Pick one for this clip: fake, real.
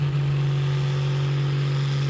real